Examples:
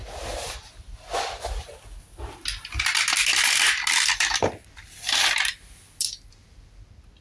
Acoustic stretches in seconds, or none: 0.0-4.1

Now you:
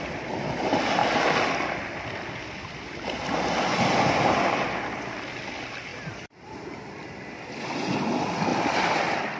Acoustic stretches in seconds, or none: 0.0-5.9; 6.5-8.5

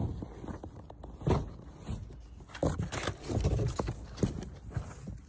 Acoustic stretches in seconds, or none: 0.0-5.3

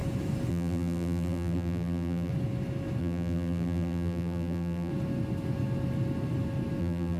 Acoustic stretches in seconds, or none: 0.0-0.5; 2.3-3.0; 4.9-6.8

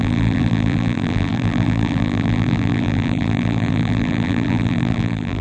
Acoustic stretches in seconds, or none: none

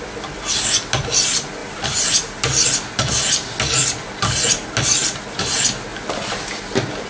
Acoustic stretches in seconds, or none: 0.0-1.6; 2.9-5.0; 5.5-5.9; 6.6-7.1

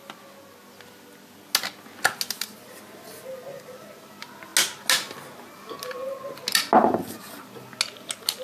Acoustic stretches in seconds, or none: 0.0-8.4

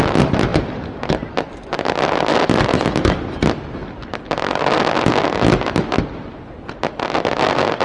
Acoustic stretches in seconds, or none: 0.0-7.8